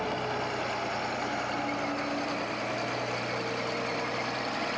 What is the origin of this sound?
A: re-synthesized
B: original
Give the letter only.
B